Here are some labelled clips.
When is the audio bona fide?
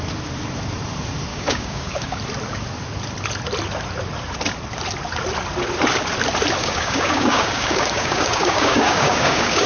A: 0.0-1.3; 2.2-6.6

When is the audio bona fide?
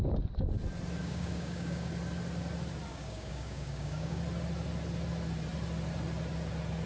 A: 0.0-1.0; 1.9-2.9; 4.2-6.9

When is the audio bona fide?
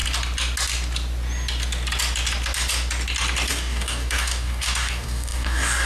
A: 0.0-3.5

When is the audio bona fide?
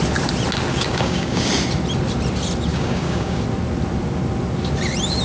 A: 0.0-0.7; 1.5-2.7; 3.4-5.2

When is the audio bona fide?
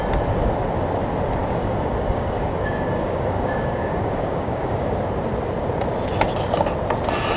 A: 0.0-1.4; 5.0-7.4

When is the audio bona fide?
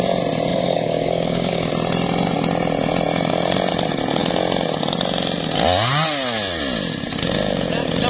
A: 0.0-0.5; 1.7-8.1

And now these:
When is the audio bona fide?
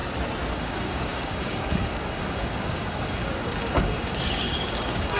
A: 0.0-0.5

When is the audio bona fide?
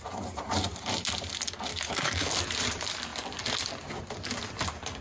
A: 0.0-1.7; 2.3-5.0